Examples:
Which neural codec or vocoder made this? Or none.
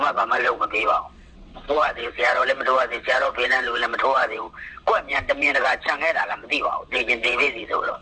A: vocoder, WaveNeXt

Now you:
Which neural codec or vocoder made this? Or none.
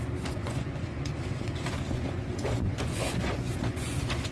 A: vocoder, Vocos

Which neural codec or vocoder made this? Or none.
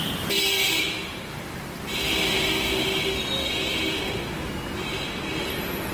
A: none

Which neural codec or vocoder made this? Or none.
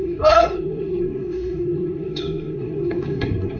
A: codec, SNAC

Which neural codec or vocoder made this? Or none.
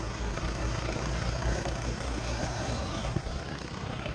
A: codec, SNAC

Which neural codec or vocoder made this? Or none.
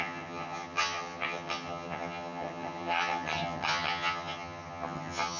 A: vocoder, HiFi-GAN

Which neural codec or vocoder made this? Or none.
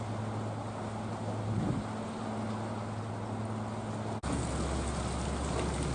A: none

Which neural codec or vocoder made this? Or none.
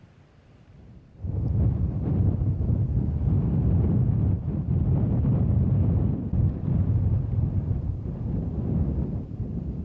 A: none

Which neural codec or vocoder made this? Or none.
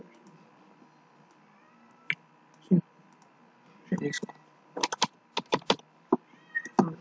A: none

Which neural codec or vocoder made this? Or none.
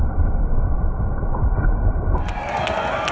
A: none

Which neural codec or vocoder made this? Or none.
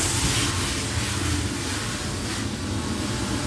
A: none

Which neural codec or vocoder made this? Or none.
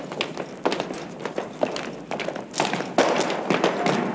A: none